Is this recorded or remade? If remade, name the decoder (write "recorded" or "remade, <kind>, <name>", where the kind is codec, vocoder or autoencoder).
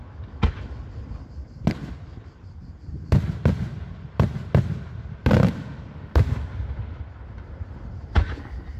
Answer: recorded